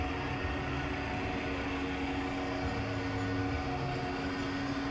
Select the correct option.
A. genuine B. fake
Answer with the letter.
A